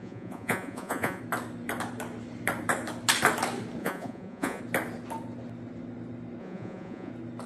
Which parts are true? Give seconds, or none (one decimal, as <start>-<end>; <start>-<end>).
1.2-3.8; 4.6-6.4; 7.1-7.5